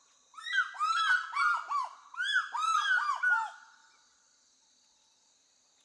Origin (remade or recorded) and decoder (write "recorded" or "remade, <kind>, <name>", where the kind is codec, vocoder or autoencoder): recorded